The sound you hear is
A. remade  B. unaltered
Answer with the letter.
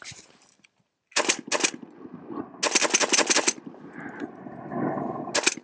B